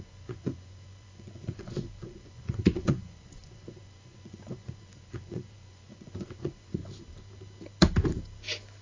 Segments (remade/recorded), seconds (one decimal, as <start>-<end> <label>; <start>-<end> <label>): 0.0-6.8 remade; 6.8-8.8 recorded